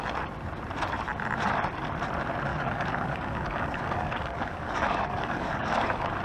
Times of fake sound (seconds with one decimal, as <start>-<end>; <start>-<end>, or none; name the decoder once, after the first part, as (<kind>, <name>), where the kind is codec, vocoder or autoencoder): 2.5-6.2 (codec, DAC)